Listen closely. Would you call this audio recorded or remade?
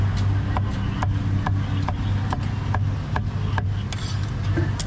recorded